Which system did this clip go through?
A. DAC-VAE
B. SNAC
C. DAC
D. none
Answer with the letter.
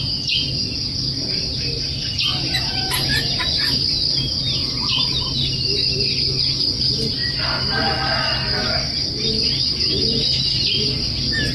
D